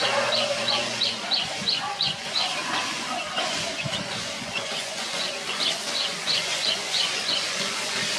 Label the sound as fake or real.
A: fake